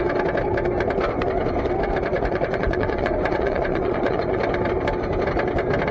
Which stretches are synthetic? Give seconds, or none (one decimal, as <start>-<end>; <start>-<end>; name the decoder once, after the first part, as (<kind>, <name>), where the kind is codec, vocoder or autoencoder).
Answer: 2.1-4.4 (vocoder, Vocos)